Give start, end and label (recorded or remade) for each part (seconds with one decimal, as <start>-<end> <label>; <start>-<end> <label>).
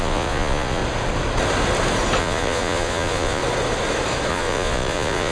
0.0-0.8 remade; 0.8-2.2 recorded; 2.2-3.4 remade; 3.4-4.3 recorded; 4.3-5.3 remade